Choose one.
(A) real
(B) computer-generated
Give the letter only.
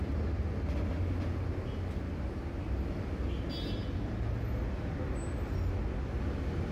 A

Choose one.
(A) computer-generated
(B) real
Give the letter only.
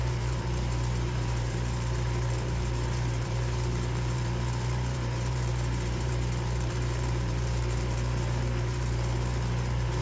A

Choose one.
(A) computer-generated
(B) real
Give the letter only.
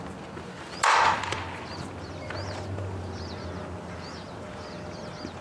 B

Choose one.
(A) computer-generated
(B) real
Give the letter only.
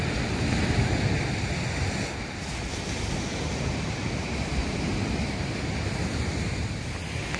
B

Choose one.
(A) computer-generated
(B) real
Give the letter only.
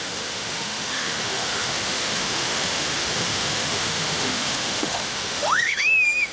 A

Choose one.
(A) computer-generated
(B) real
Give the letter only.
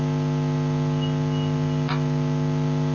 B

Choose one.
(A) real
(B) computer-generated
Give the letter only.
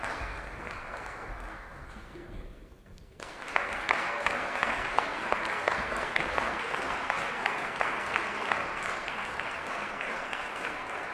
B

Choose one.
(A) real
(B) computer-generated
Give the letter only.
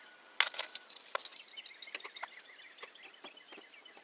A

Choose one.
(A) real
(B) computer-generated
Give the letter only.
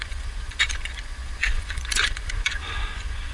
B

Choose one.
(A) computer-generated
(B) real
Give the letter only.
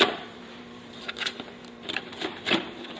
A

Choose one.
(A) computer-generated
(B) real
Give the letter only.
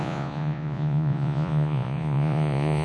A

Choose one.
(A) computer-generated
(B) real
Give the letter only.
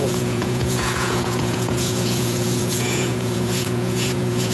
A